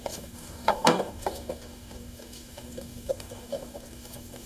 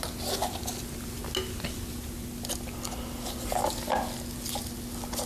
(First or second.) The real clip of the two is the second